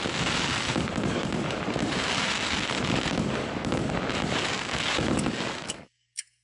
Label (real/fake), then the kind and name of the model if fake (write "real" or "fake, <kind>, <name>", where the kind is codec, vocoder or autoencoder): fake, codec, DAC